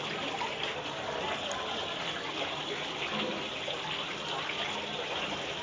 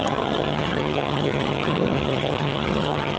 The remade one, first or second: second